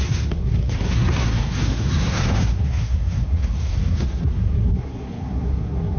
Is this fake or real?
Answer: fake